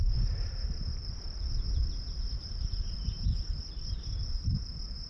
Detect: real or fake real